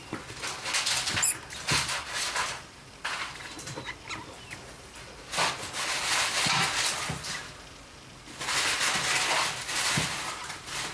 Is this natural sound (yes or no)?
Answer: yes